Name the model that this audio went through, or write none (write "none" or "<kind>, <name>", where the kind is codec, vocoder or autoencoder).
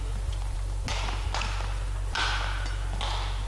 none